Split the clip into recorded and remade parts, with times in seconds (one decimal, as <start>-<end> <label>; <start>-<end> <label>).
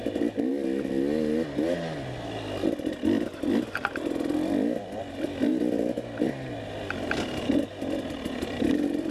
0.0-9.1 recorded